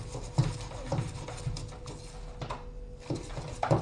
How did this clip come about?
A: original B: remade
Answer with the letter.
A